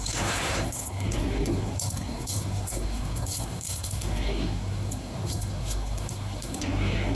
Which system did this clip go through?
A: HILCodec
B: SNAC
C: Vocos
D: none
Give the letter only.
B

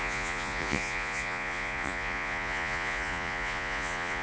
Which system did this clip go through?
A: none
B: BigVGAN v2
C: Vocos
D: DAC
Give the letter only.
C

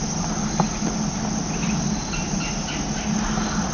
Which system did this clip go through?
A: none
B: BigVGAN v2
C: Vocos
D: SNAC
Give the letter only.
A